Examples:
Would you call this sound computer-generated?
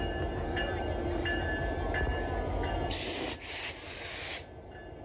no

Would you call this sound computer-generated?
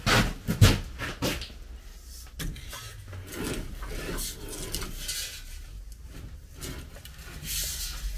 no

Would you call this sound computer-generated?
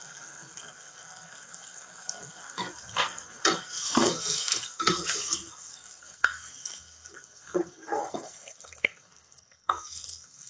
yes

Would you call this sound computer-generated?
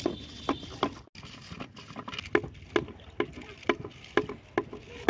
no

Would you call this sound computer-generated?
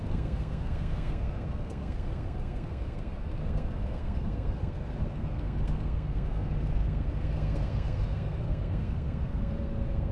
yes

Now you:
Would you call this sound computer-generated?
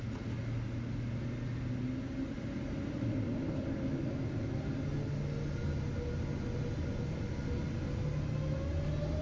no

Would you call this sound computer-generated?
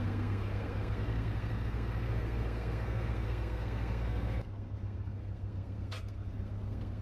yes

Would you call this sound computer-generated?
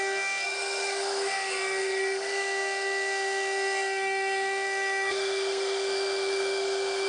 yes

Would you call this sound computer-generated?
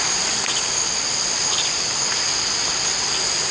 no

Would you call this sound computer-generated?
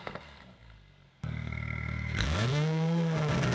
yes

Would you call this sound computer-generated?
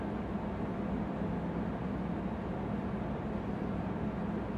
no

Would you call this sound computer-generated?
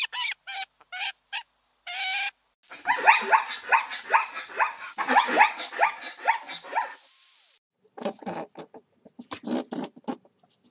no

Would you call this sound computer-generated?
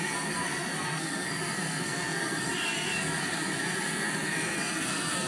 yes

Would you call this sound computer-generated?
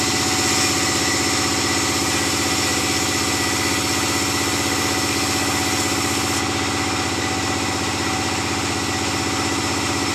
no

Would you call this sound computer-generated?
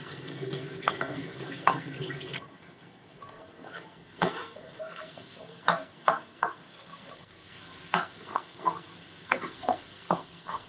yes